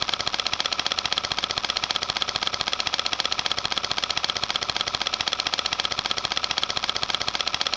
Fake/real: fake